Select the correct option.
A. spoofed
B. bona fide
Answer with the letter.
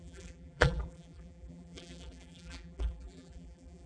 A